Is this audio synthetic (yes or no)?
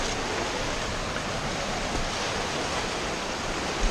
no